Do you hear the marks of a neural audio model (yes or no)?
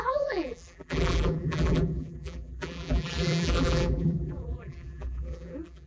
yes